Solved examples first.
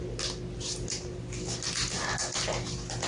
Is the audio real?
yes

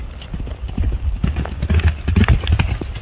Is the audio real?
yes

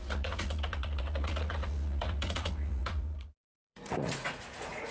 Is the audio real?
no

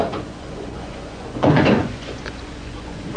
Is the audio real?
no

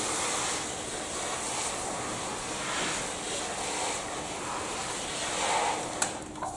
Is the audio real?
yes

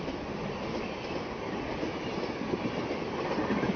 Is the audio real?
yes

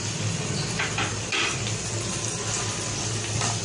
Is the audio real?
yes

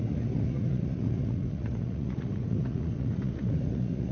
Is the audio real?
no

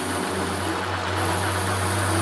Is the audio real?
yes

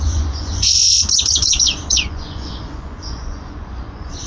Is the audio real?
no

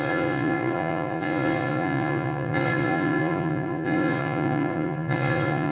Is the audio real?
no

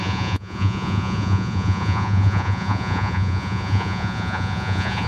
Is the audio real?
no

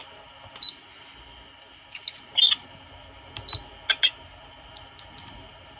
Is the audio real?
yes